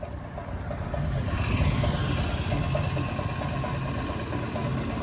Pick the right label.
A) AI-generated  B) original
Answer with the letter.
B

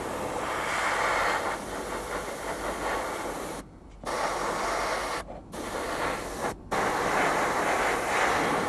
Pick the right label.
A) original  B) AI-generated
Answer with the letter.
A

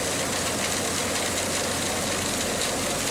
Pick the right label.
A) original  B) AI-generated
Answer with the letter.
A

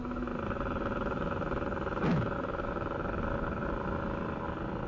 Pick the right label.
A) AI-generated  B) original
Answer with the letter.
B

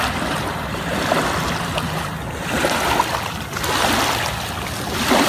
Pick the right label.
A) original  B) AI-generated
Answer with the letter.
A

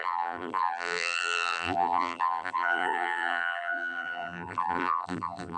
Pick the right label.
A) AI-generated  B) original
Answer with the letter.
A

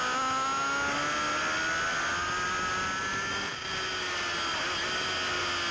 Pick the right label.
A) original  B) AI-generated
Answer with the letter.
A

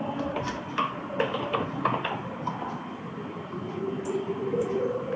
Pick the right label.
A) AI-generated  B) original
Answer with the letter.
B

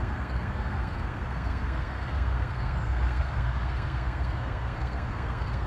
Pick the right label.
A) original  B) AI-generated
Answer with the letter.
B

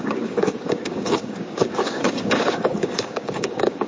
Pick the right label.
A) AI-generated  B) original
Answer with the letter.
A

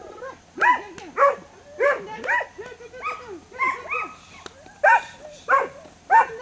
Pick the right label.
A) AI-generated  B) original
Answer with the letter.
B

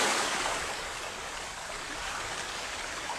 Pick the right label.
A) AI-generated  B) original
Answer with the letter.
A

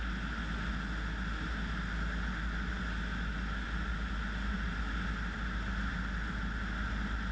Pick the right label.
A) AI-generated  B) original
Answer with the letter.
B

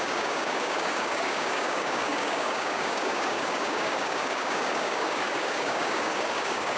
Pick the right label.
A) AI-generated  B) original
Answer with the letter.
A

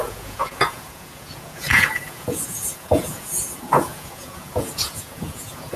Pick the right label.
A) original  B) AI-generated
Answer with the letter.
B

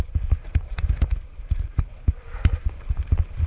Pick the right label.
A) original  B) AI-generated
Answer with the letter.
B